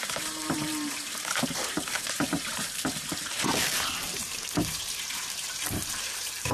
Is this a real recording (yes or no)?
no